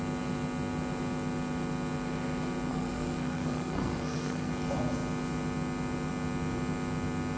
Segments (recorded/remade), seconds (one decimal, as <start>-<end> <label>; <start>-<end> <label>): 0.0-2.7 recorded; 2.7-4.5 remade; 4.5-7.4 recorded